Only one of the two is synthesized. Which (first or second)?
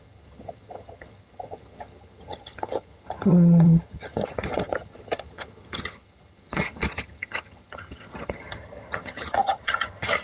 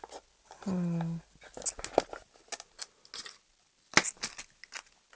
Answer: first